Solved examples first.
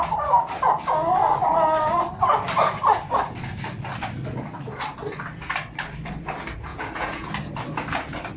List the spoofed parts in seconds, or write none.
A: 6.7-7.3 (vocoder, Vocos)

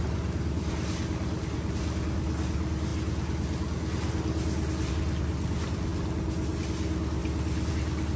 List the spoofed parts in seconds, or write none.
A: none

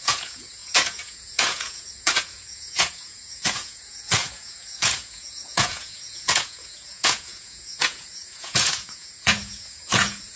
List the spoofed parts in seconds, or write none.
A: 0.0-10.4 (vocoder, Vocos)

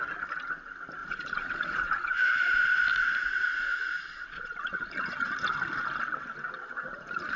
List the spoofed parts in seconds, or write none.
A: 1.0-2.2 (vocoder, Vocos); 3.2-5.3

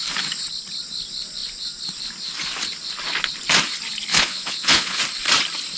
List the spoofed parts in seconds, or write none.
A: 4.1-5.0 (vocoder, Vocos)

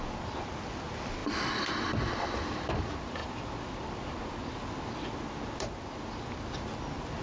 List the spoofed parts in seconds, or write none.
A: none

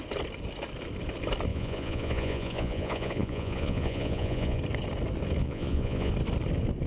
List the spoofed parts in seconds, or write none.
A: 1.5-4.6 (vocoder, Vocos); 5.4-6.1